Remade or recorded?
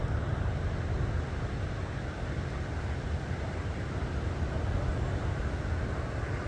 recorded